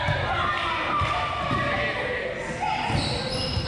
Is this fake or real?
real